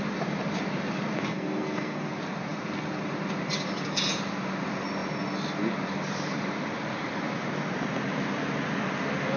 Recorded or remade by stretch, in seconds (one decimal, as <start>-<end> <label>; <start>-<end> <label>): 0.0-1.3 recorded; 1.3-2.1 remade; 2.1-9.4 recorded